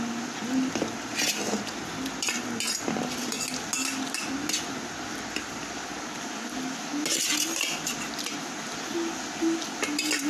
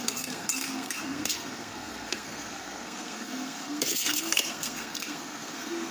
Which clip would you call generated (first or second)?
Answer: second